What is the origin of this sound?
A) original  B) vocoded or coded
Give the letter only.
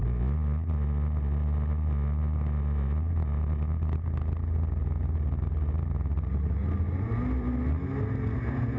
A